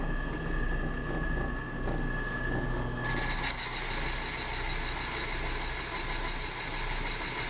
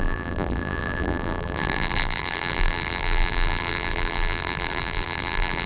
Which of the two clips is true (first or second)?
first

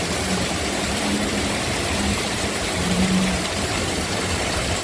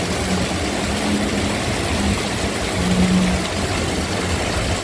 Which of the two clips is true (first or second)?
second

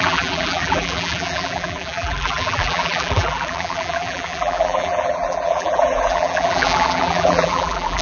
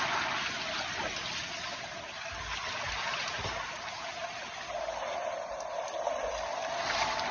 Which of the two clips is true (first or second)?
second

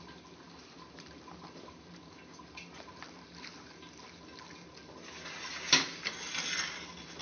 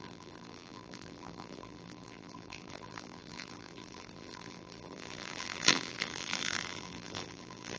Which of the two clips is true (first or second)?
first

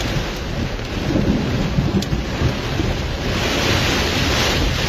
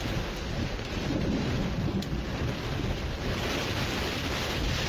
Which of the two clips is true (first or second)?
first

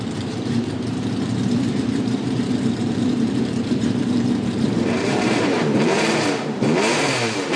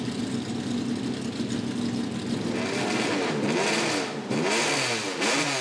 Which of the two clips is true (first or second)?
second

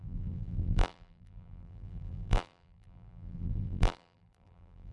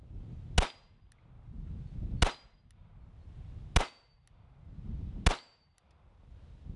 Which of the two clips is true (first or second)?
second